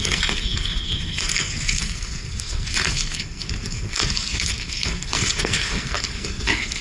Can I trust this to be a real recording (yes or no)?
no